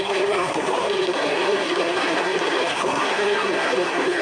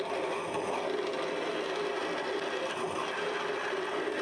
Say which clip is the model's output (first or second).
first